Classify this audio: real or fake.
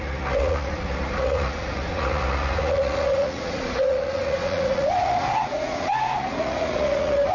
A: fake